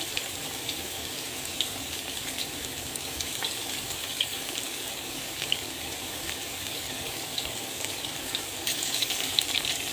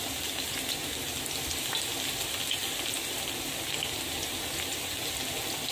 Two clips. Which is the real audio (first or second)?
second